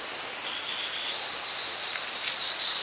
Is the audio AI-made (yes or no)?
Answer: no